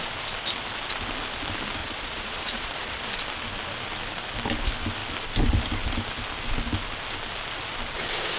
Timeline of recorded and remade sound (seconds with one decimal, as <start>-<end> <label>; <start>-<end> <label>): 0.0-1.8 recorded; 1.8-2.7 remade; 2.7-8.4 recorded